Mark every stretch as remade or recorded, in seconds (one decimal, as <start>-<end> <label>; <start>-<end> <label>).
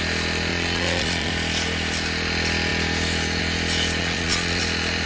0.0-0.5 recorded; 0.5-1.3 remade; 1.3-4.0 recorded; 4.0-4.6 remade; 4.6-5.1 recorded